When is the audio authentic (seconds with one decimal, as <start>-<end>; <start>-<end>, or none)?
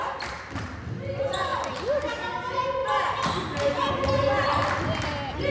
0.0-5.5